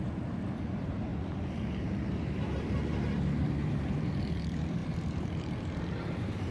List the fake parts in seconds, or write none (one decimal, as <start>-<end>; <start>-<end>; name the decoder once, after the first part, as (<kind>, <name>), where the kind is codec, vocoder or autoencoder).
0.0-6.5 (vocoder, BigVGAN v2)